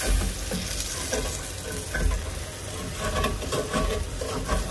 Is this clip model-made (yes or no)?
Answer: no